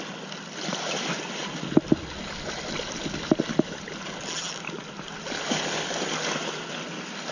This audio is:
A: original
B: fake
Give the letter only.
A